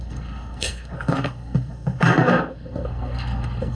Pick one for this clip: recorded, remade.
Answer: remade